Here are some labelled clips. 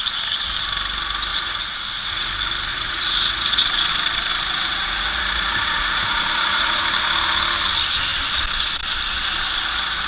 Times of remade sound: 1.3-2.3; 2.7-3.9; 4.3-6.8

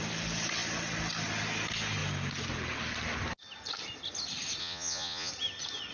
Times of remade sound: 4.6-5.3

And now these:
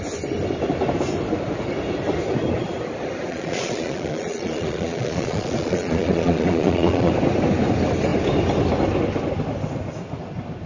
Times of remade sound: 3.3-7.1

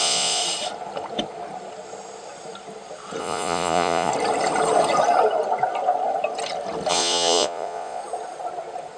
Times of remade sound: 0.0-0.4; 3.2-4.1; 6.9-8.0

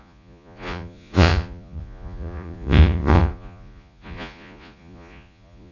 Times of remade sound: 0.0-5.7

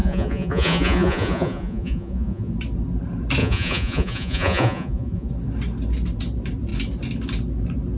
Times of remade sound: 0.0-2.5; 3.4-5.3

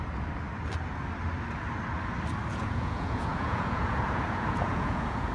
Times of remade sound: 2.5-5.3